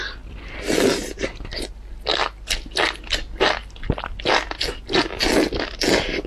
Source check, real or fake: real